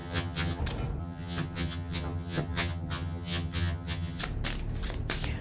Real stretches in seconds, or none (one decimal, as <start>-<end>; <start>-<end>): 0.6-1.0; 4.2-5.4